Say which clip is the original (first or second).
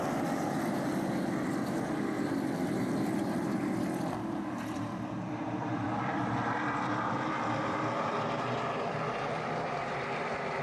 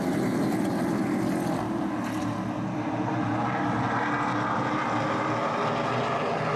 second